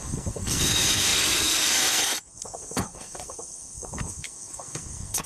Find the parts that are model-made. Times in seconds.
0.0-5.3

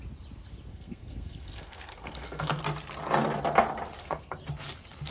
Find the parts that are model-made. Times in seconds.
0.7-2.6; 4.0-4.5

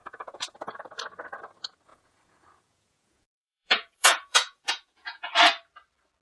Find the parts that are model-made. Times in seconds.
0.0-0.8; 1.9-5.3